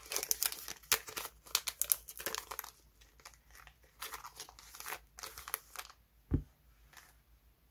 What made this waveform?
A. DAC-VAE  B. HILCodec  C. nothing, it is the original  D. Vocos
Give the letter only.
C